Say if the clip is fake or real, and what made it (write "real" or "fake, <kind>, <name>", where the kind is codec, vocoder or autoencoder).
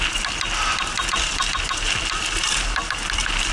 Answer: real